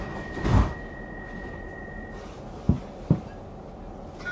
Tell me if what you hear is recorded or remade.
recorded